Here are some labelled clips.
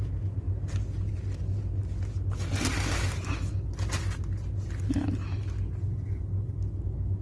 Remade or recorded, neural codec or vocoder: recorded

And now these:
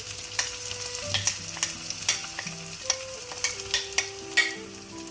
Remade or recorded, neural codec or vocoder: recorded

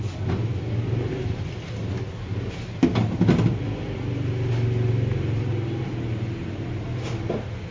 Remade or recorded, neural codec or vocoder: recorded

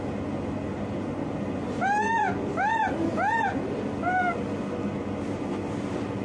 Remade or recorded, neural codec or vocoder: recorded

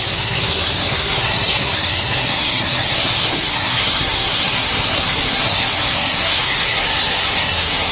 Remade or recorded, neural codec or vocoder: remade, codec, SNAC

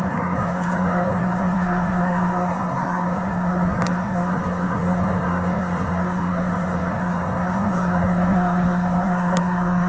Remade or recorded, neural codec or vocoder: remade, codec, SNAC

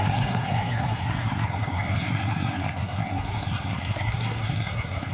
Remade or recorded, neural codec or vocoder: remade, codec, SNAC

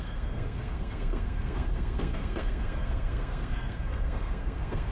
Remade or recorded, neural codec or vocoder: remade, codec, SNAC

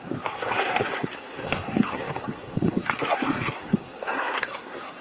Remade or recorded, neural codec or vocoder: remade, codec, SNAC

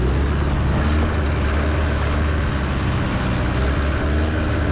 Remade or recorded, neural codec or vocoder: recorded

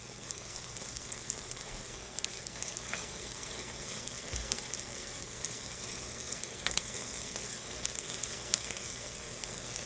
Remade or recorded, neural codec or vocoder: remade, codec, SNAC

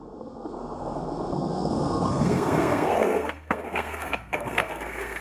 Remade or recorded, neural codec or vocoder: remade, codec, SNAC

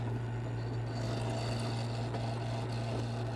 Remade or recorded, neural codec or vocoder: recorded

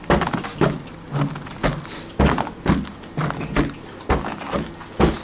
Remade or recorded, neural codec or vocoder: recorded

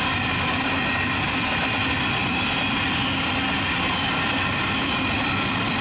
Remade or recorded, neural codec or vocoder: recorded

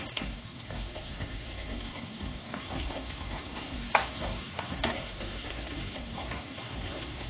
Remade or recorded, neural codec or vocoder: remade, codec, SNAC